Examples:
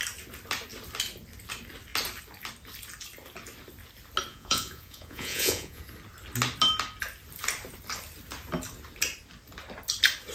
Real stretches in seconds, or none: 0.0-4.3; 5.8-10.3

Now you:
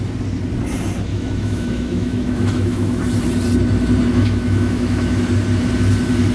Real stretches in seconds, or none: 0.0-1.1; 3.0-4.1; 5.2-6.3